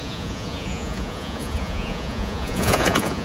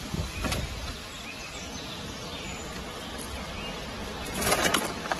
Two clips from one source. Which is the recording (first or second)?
second